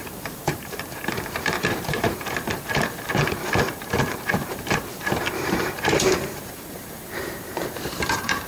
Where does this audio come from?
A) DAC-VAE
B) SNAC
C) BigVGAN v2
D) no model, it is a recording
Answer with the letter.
C